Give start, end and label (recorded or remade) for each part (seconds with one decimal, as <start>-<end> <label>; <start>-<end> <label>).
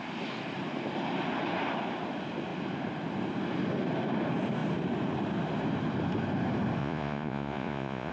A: 0.0-6.8 recorded; 6.8-8.1 remade